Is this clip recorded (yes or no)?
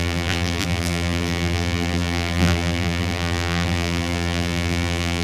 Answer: no